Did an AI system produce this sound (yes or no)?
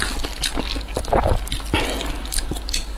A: no